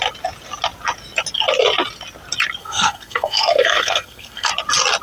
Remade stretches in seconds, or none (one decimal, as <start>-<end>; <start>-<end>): 2.6-4.5